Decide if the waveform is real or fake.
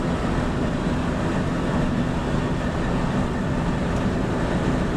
real